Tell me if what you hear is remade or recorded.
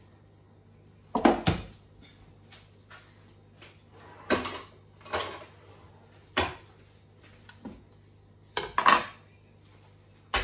recorded